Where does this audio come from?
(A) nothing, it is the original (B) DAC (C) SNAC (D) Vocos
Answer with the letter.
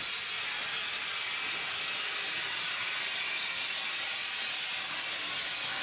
A